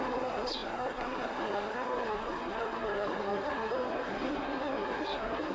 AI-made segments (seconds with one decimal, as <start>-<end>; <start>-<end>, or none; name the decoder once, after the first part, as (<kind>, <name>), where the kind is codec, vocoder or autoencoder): 0.0-5.5 (codec, SNAC)